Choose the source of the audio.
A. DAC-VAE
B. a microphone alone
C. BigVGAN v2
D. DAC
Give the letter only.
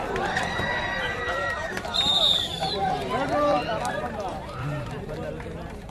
C